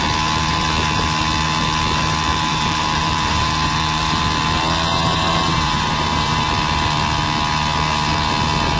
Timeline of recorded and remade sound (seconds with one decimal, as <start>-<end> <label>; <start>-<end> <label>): 0.0-2.3 recorded; 2.3-4.2 remade; 4.2-4.9 recorded; 4.9-6.5 remade; 6.5-8.8 recorded